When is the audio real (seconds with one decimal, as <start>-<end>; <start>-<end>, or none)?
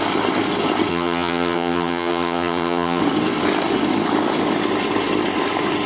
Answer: 0.0-0.9; 3.0-5.9